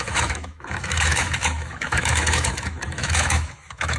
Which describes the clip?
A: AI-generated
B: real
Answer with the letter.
A